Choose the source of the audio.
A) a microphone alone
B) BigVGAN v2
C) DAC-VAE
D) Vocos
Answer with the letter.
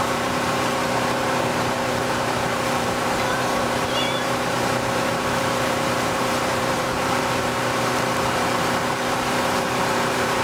B